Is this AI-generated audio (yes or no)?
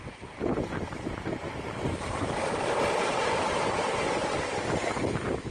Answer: no